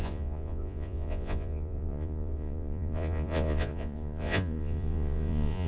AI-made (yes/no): yes